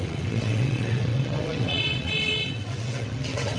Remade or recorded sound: remade